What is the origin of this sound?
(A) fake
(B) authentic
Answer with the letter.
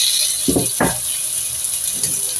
B